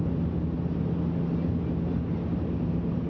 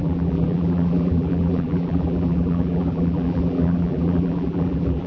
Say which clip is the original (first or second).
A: first